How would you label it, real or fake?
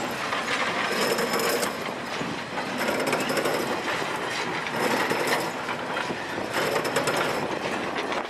real